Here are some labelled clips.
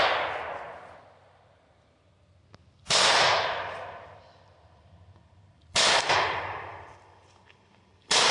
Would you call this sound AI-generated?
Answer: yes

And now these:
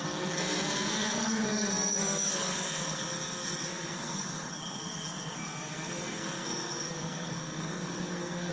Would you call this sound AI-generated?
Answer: yes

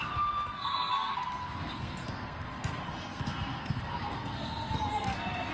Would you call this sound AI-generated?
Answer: yes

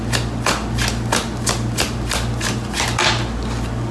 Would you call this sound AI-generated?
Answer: no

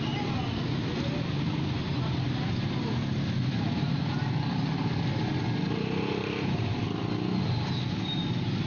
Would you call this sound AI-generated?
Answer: no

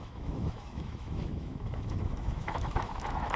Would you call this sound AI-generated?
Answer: yes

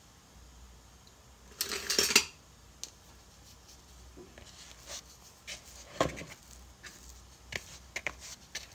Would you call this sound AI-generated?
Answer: no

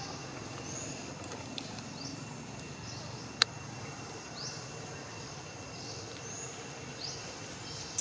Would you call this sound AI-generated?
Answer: no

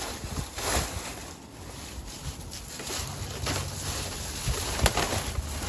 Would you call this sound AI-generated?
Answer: no